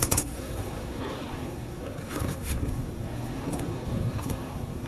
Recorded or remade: remade